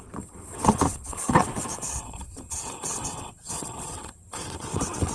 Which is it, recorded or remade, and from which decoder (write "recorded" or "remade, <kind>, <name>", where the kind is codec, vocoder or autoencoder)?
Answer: remade, vocoder, WaveNeXt